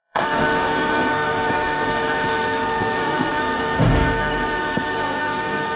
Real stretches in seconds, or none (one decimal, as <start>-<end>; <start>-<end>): none